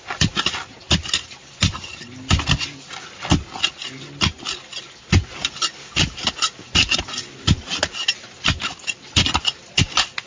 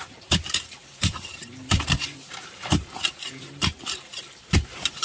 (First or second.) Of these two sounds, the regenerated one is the second